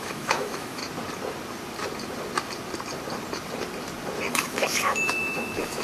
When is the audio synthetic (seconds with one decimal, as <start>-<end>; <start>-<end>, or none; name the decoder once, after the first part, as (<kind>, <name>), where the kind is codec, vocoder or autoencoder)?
0.0-0.8 (autoencoder, DAC-VAE); 4.3-5.8